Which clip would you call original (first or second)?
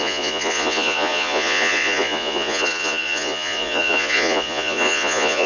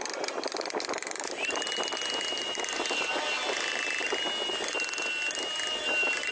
second